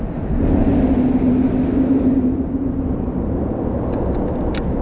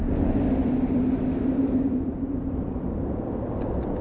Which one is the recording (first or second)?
first